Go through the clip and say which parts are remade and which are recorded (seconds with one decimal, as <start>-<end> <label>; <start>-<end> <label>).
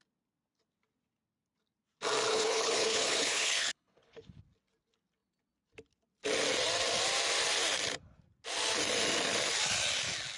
0.0-2.3 recorded; 2.3-4.4 remade; 4.4-10.4 recorded